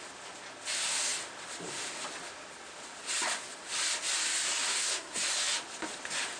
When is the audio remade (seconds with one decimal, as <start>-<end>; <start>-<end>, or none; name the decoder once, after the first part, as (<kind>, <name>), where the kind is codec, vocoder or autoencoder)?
4.7-5.2 (codec, SNAC)